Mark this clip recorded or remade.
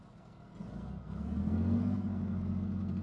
remade